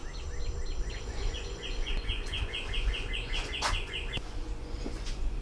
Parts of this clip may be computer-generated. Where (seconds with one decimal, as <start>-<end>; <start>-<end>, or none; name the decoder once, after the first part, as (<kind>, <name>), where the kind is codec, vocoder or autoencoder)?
0.8-5.4 (vocoder, Vocos)